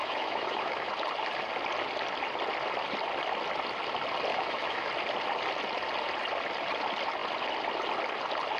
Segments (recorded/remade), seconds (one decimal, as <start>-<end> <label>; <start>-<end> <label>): 0.0-0.9 remade; 0.9-4.3 recorded; 4.3-4.9 remade; 4.9-8.6 recorded